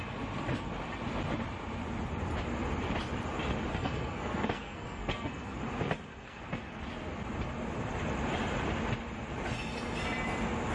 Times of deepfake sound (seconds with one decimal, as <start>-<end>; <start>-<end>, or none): 3.7-5.6; 6.1-6.8